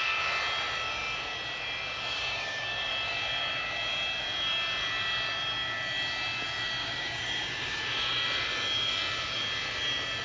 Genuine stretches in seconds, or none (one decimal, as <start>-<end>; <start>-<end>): 0.0-2.1; 2.9-6.8; 7.8-10.2